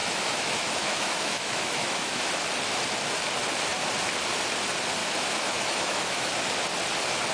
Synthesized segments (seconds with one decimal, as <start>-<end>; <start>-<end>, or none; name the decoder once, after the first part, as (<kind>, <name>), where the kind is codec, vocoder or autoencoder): 0.0-2.2 (autoencoder, DAC-VAE); 5.0-6.3

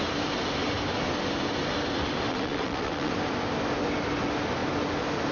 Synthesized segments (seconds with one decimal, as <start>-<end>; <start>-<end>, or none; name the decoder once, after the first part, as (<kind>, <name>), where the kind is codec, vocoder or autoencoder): 2.3-3.1 (vocoder, WaveNeXt)

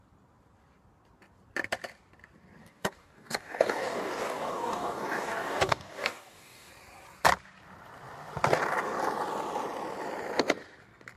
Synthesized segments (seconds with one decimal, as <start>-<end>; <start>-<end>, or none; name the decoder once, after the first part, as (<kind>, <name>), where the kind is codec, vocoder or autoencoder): 2.6-6.7 (codec, DAC)